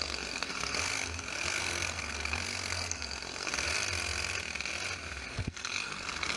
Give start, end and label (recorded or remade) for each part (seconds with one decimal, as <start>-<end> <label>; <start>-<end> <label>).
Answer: 0.0-3.7 remade; 3.7-5.3 recorded; 5.3-6.4 remade